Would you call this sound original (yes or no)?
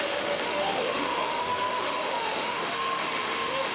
no